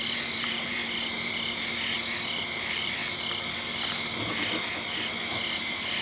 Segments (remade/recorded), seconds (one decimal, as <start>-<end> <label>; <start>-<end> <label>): 0.0-0.8 remade; 0.8-2.6 recorded; 2.6-3.0 remade; 3.0-5.6 recorded; 5.6-6.0 remade